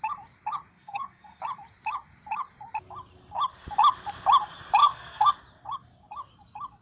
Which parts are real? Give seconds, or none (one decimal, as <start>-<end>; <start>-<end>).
0.0-0.7; 1.4-4.8; 5.3-6.8